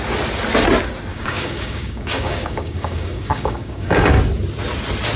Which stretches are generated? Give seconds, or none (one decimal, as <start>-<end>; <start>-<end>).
1.1-4.2